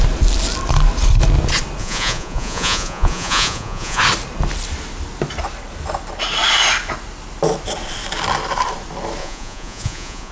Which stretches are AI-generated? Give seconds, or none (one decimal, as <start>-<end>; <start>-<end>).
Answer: 1.8-4.0; 9.2-10.3